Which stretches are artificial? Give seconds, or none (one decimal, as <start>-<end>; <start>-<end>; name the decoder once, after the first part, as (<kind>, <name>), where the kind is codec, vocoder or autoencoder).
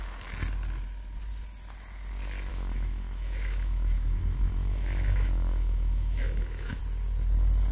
2.5-6.8 (autoencoder, DAC-VAE)